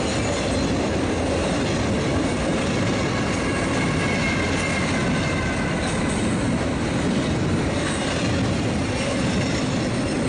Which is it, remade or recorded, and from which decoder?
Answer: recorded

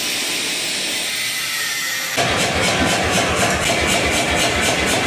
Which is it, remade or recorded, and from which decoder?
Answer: recorded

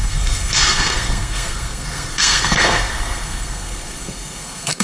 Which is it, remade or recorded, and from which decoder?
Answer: remade, codec, SNAC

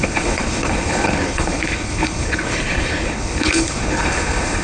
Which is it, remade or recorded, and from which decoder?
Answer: remade, codec, HILCodec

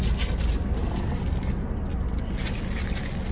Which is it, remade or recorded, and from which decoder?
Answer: recorded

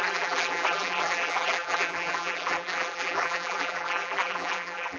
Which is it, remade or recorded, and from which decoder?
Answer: remade, vocoder, BigVGAN v2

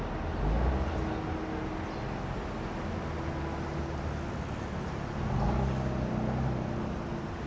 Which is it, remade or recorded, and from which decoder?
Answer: recorded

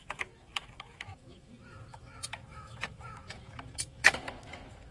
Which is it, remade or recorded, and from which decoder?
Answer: remade, autoencoder, DAC-VAE